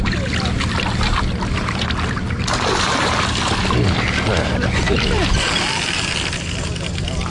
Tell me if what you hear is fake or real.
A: real